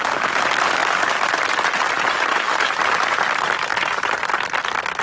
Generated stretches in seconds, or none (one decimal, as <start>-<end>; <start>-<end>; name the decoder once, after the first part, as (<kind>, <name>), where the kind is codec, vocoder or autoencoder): 2.3-2.8 (autoencoder, DAC-VAE)